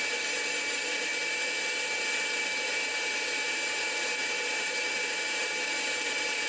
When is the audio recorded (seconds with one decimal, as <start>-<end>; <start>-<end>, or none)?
1.1-2.4